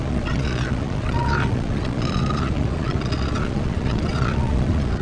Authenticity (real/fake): fake